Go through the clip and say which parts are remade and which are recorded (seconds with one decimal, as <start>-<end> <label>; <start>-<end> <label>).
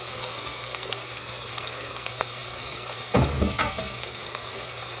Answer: 0.0-5.0 remade